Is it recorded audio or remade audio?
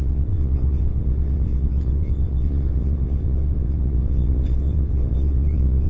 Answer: remade